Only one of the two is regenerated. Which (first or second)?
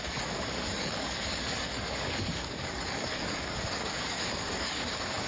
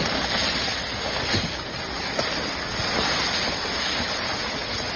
first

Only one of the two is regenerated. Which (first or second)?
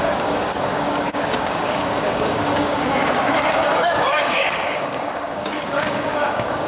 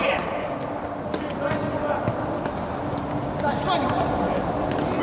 first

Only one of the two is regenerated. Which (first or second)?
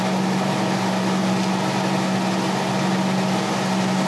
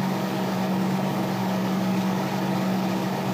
second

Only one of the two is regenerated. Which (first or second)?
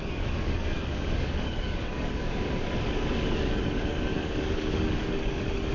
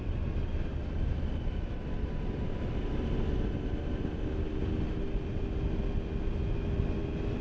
first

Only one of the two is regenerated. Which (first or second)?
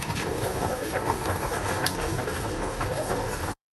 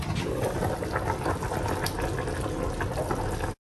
first